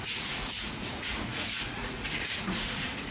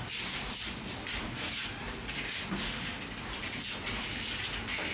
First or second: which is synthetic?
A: first